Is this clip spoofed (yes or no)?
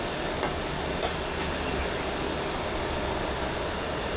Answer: no